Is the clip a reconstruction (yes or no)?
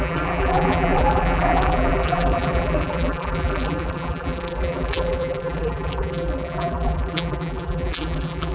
yes